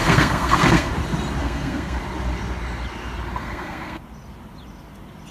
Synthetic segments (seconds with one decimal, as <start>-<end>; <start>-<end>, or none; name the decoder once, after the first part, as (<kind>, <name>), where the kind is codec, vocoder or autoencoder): 0.0-0.9 (codec, SNAC); 1.4-2.0; 3.4-4.0

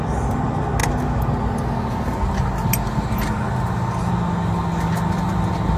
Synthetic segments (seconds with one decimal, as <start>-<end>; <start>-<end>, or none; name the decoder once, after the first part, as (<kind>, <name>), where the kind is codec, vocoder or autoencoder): none

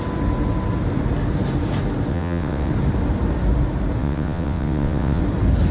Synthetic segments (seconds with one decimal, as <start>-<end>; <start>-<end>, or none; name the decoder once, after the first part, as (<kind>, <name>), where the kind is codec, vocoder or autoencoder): 2.1-2.7 (vocoder, WaveNeXt); 4.0-5.2

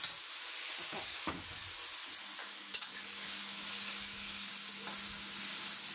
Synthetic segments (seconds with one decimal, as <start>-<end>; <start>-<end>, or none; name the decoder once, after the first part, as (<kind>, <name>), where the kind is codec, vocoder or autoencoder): 0.9-1.6 (codec, DAC); 2.4-4.5

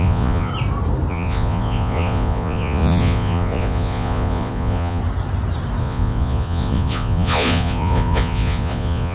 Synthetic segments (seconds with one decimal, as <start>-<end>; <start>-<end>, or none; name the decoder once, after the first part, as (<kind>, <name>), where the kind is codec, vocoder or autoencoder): 0.0-0.5 (vocoder, Vocos); 1.1-5.0; 5.8-9.1